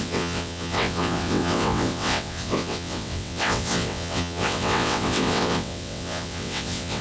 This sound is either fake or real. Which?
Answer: fake